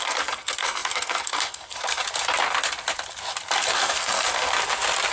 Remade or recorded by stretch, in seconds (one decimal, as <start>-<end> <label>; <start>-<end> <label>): 0.0-2.0 remade; 2.0-3.6 recorded; 3.6-4.5 remade; 4.5-5.1 recorded